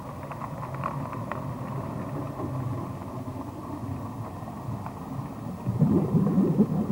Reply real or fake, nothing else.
real